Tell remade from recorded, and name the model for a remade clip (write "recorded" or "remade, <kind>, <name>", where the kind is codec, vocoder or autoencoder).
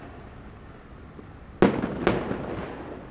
recorded